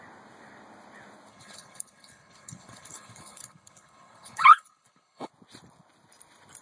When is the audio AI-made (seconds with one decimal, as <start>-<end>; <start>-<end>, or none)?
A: 1.3-5.3